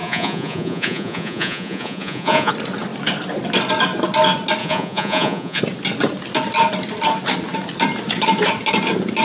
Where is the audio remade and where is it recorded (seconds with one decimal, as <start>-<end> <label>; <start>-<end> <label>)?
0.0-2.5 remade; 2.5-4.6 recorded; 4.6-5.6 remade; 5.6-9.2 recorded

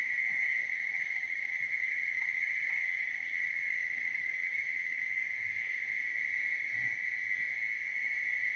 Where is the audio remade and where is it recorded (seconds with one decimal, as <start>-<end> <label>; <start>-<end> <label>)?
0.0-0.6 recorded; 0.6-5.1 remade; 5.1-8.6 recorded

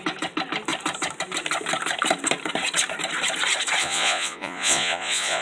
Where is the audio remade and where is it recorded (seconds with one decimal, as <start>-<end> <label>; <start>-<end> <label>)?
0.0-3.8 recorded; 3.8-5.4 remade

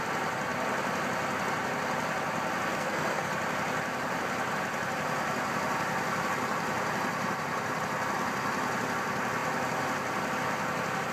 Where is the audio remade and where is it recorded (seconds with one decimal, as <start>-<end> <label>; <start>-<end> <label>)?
0.0-2.7 recorded; 2.7-3.3 remade; 3.3-11.1 recorded